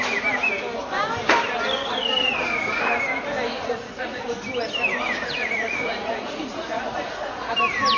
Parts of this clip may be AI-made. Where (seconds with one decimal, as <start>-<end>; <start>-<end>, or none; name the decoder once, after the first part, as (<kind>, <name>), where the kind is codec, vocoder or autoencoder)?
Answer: 3.5-4.2 (vocoder, Vocos); 5.2-7.5